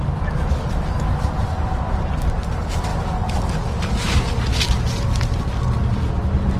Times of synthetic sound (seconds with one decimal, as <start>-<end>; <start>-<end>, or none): none